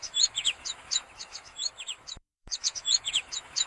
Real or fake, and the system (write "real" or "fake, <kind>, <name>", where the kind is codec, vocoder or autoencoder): fake, autoencoder, DAC-VAE